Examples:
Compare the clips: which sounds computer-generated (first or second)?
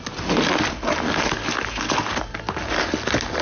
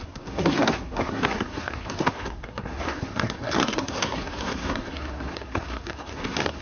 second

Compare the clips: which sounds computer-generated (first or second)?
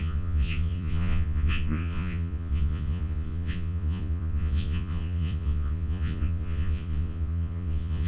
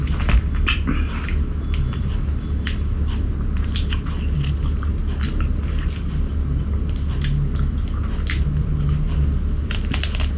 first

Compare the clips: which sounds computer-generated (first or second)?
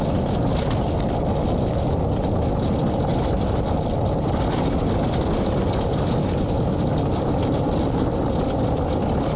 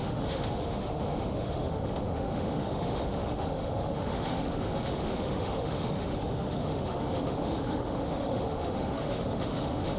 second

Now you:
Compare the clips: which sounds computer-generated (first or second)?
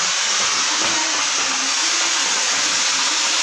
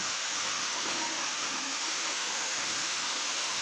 second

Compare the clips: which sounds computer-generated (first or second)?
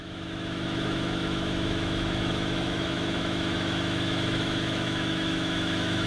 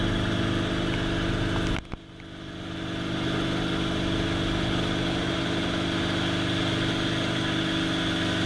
first